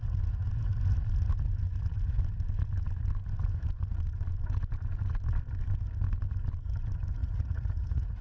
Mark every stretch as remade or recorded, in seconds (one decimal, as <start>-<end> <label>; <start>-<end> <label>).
0.0-7.2 recorded; 7.2-8.2 remade